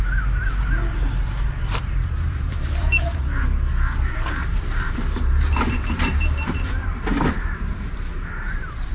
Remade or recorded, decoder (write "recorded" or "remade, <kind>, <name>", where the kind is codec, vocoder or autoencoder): remade, vocoder, BigVGAN v2